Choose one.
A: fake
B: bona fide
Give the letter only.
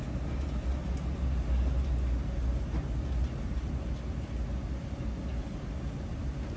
B